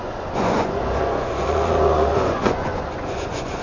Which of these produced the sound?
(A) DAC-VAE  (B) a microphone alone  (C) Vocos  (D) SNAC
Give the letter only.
C